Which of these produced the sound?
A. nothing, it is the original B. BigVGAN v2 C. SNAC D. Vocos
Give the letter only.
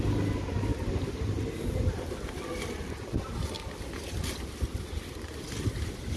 A